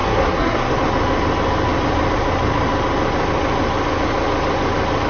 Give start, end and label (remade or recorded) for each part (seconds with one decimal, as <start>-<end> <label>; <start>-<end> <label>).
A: 0.0-0.7 remade; 0.7-5.1 recorded